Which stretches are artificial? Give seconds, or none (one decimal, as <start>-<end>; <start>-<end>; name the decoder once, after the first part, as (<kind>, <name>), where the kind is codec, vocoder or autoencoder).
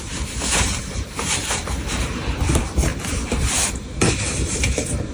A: 0.0-2.9 (vocoder, BigVGAN v2); 3.5-5.1